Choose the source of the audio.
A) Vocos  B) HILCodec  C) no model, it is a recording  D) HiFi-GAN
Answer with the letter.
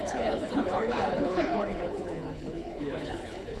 B